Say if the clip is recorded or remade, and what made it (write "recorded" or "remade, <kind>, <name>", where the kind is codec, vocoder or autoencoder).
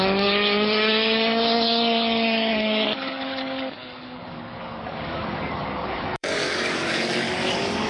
remade, codec, DAC